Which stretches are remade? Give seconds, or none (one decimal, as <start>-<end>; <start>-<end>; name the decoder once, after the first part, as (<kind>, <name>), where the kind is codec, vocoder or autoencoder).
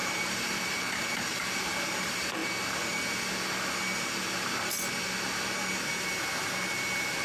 0.0-2.4 (vocoder, BigVGAN v2); 6.7-7.2